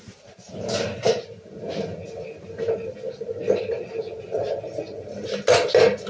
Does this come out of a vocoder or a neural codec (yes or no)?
no